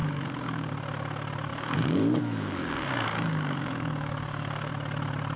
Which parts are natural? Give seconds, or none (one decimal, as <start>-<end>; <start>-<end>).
0.7-1.5; 4.7-5.4